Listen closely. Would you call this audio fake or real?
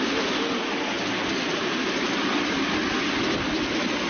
real